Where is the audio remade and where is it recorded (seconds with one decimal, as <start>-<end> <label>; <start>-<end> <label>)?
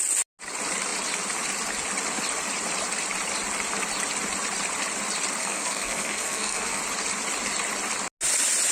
0.0-5.4 recorded; 5.4-6.8 remade; 6.8-8.7 recorded